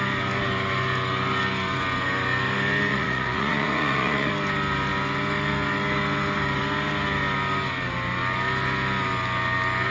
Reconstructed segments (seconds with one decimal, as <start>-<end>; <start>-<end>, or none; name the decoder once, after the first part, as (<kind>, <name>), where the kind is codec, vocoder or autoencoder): 2.9-4.3 (vocoder, Vocos)